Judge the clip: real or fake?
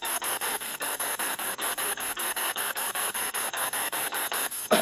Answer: fake